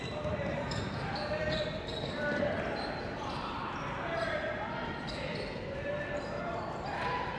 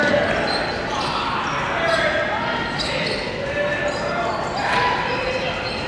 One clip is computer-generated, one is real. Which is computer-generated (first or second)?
first